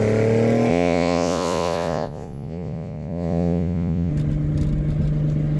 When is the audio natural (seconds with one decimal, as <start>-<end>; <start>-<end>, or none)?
0.0-0.7; 4.1-5.6